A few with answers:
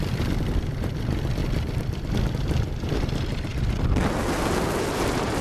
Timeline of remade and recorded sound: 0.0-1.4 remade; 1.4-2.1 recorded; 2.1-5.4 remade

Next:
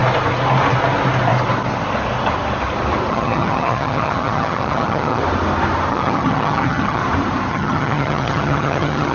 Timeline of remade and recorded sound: 0.0-3.1 recorded; 3.1-5.2 remade; 5.2-5.9 recorded; 5.9-7.0 remade; 7.0-7.5 recorded; 7.5-9.1 remade

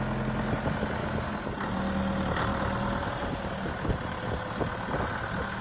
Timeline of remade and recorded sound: 0.0-2.5 recorded; 2.5-3.5 remade; 3.5-5.6 recorded

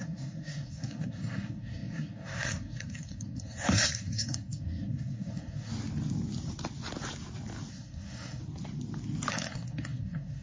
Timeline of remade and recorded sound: 0.0-5.7 remade; 5.7-7.7 recorded; 7.7-8.4 remade; 8.4-9.3 recorded; 9.3-10.4 remade

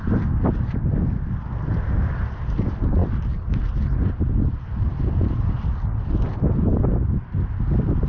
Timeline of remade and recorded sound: 0.0-8.1 recorded

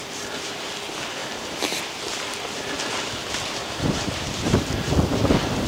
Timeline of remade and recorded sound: 0.0-0.7 remade; 0.7-1.2 recorded; 1.2-1.8 remade; 1.8-3.6 recorded; 3.6-4.9 remade; 4.9-5.7 recorded